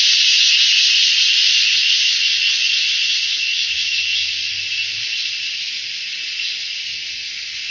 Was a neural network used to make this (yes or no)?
no